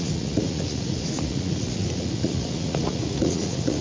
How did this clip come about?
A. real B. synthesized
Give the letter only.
B